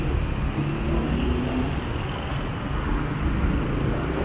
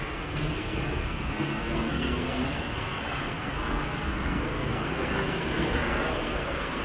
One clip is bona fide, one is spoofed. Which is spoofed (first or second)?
second